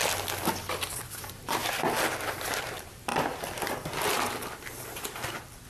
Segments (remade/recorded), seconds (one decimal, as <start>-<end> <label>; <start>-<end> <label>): 0.0-1.0 recorded; 1.0-1.6 remade; 1.6-2.6 recorded; 2.6-3.1 remade; 3.1-4.8 recorded; 4.8-5.7 remade